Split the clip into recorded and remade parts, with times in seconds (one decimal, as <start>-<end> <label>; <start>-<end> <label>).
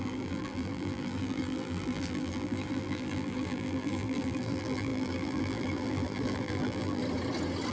0.0-7.0 remade; 7.0-7.7 recorded